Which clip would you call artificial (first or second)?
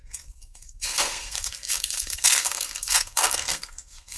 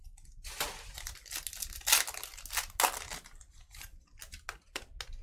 first